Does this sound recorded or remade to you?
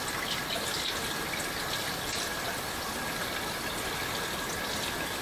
recorded